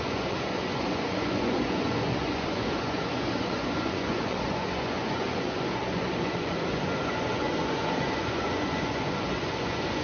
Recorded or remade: remade